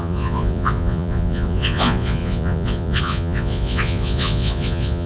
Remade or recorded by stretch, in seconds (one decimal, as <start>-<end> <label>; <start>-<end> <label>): 0.0-5.1 remade